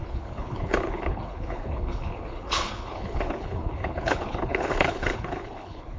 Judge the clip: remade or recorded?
remade